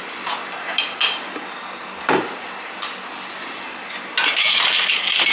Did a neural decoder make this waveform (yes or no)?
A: no